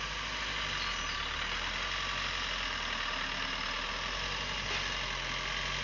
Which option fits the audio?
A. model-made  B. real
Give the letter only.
B